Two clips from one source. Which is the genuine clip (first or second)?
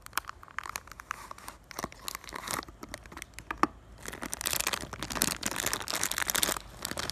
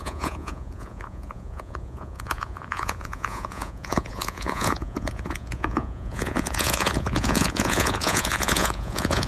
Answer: first